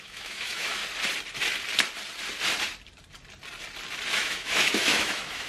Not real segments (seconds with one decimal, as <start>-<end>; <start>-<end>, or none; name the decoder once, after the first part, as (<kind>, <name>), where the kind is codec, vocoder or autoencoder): 0.0-0.8 (autoencoder, DAC-VAE); 4.1-5.5